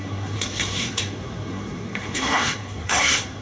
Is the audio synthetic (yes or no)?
yes